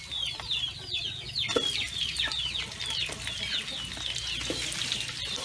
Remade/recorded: recorded